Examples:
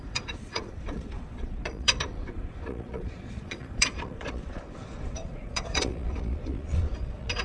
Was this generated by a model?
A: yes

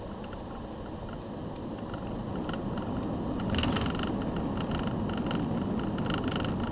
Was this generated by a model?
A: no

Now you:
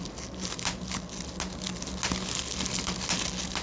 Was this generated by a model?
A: no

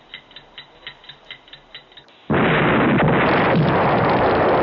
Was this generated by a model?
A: no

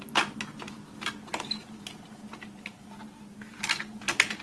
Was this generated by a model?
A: no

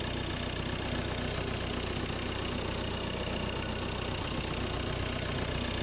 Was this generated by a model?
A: no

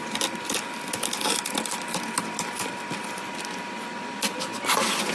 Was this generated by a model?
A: no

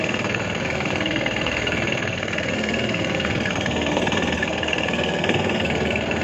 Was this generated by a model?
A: yes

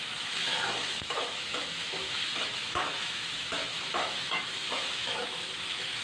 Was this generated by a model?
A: yes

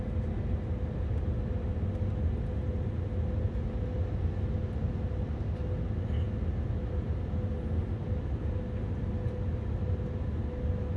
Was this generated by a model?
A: no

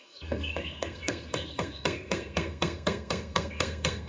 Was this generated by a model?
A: yes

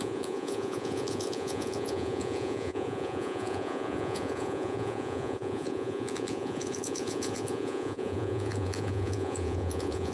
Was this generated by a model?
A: yes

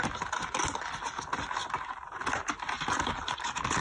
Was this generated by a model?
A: no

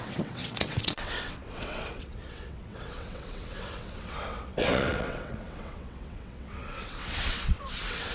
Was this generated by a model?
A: yes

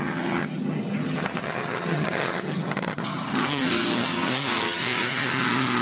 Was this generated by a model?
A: yes